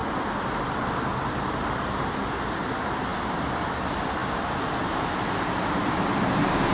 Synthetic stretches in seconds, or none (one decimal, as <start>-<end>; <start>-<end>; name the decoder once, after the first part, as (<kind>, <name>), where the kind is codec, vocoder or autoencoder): none